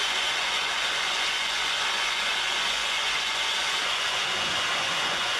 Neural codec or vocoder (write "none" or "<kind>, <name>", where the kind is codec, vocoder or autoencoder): vocoder, Vocos